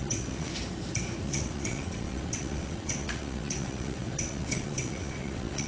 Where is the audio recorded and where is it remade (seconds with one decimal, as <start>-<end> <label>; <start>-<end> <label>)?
0.0-0.5 remade; 0.5-1.2 recorded; 1.2-5.7 remade